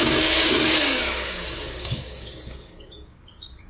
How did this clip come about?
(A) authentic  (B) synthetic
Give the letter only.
B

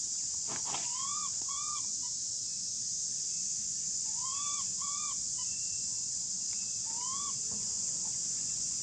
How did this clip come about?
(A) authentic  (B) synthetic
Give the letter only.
B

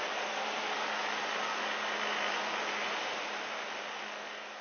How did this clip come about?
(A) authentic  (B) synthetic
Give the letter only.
A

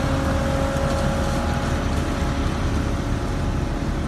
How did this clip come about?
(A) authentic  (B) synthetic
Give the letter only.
A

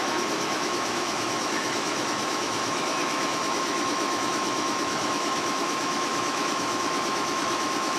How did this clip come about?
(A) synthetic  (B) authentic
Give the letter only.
A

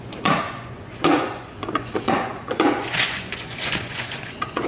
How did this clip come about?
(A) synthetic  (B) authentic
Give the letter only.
A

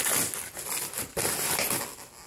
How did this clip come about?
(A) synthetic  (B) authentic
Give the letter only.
B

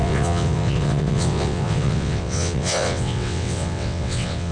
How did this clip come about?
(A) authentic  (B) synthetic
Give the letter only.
B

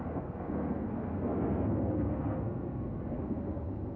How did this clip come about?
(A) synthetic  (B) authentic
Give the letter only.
A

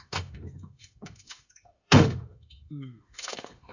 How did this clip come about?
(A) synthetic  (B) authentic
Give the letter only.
A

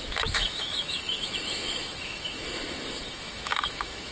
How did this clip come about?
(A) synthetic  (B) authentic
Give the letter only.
A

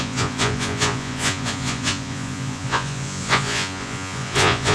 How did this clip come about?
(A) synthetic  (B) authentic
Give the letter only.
A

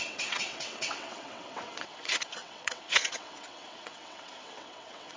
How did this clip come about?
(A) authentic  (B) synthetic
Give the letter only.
B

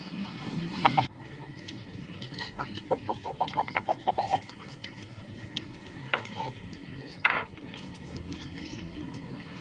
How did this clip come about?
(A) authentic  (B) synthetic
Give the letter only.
B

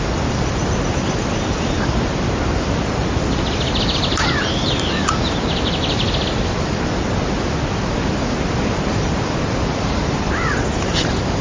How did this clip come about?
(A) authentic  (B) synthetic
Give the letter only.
B